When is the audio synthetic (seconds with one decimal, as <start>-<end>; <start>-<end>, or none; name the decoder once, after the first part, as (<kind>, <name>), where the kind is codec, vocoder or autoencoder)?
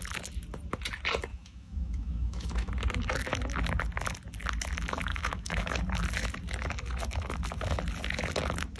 1.3-2.7 (autoencoder, DAC-VAE); 5.1-5.7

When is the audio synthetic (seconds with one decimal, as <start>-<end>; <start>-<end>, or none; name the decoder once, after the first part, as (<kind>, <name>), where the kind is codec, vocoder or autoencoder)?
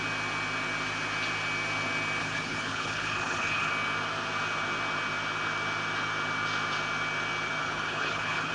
2.2-3.7 (codec, HILCodec); 7.6-8.5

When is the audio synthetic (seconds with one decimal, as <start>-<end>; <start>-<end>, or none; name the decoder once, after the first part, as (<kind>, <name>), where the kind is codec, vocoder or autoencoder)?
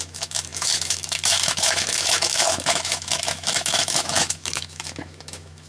0.0-5.7 (autoencoder, DAC-VAE)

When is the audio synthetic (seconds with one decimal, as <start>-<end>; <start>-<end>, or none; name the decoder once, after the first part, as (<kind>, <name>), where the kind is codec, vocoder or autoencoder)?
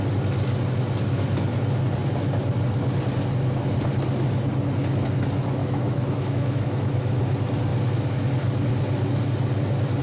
5.6-7.2 (autoencoder, DAC-VAE)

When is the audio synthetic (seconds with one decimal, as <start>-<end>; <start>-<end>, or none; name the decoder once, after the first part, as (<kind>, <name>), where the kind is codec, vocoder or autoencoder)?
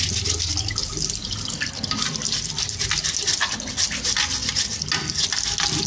none